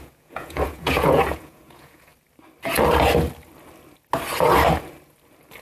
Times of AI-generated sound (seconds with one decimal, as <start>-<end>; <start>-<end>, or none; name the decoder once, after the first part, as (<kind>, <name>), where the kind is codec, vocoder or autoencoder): 0.0-2.1 (vocoder, Vocos)